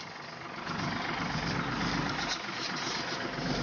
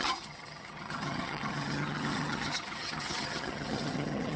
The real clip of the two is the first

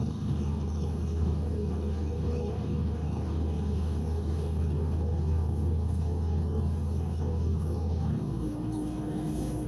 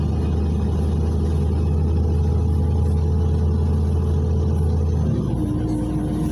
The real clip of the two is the second